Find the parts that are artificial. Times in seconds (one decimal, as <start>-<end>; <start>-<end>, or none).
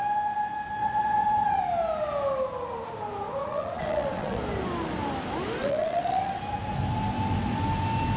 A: 0.8-1.6; 3.4-4.4; 5.6-6.4